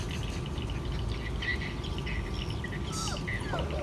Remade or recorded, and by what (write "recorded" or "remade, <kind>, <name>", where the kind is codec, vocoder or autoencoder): recorded